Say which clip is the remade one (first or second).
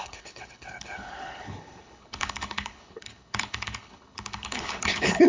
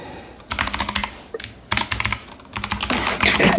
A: first